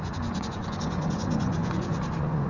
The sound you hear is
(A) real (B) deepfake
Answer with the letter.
B